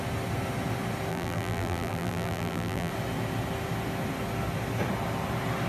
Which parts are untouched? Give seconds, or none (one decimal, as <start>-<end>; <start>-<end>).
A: 0.0-1.1; 2.9-5.7